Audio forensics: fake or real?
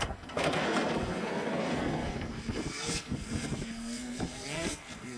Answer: fake